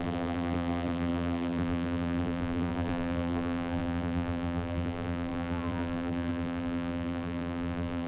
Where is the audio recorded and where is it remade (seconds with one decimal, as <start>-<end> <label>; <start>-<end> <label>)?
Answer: 0.0-8.1 remade